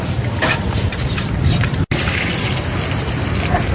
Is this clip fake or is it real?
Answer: real